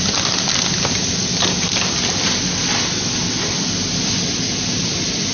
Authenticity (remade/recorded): recorded